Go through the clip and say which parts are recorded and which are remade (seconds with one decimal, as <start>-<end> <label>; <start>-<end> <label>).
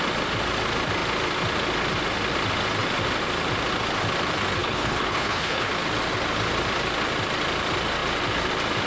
0.0-4.6 recorded; 4.6-5.7 remade; 5.7-8.9 recorded